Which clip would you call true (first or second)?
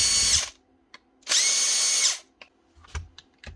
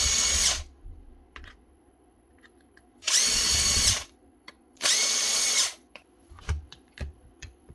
first